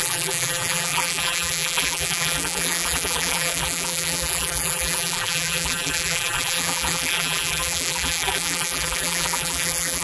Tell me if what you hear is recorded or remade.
remade